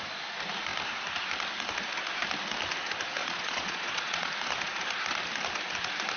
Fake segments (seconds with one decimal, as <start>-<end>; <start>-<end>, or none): 3.2-4.3